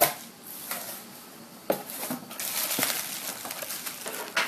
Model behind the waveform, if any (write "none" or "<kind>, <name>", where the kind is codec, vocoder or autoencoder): none